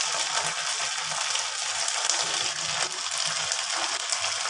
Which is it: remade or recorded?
recorded